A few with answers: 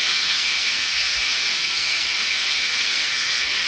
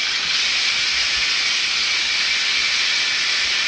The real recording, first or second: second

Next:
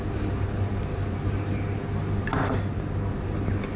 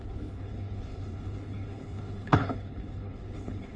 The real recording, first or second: first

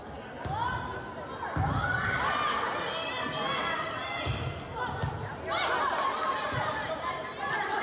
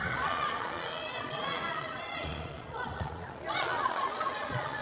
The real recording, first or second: first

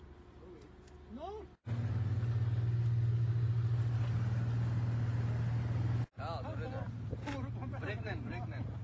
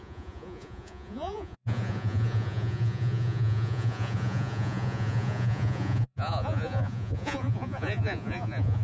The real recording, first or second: first